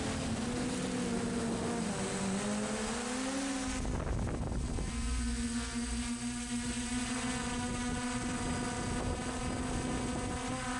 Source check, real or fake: real